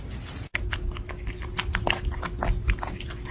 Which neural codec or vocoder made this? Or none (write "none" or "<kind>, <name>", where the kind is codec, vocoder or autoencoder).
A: none